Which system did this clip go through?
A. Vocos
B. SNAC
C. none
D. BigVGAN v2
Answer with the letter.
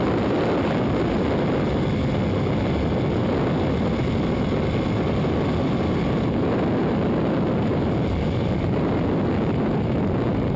C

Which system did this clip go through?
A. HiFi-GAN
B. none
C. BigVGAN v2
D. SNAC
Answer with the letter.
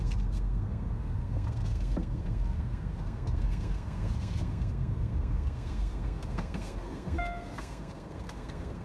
D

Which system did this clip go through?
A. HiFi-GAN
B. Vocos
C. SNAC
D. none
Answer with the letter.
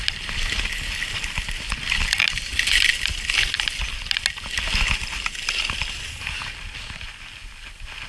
D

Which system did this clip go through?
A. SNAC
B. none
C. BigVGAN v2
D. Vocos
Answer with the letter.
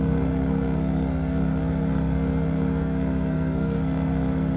A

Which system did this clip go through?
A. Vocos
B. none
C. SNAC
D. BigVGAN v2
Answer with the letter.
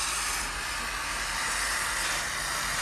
B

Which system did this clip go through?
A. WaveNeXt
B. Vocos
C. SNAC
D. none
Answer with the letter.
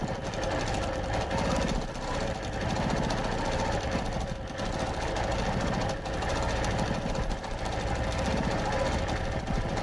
D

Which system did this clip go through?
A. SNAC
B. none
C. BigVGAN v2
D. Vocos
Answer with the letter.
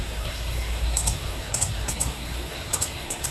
A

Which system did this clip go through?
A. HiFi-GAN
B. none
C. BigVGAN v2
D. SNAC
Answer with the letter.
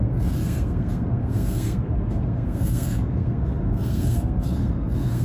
D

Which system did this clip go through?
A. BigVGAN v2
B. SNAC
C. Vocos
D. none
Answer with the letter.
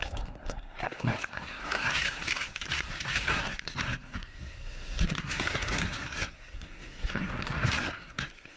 B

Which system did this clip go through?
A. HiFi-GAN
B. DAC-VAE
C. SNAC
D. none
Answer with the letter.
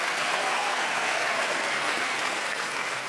C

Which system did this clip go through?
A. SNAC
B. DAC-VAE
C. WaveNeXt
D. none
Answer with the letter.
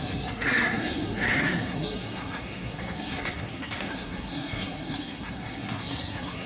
A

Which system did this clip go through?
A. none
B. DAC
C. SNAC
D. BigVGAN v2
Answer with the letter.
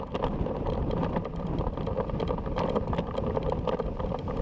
A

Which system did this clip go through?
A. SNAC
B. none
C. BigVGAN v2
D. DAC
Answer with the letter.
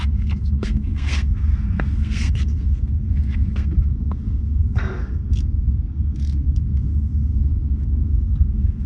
A